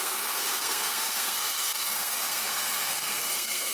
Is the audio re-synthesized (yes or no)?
yes